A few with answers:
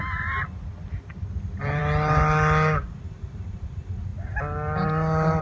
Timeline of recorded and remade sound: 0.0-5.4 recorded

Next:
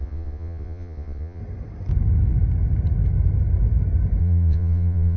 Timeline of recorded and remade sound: 0.0-1.4 remade; 1.4-4.2 recorded; 4.2-5.2 remade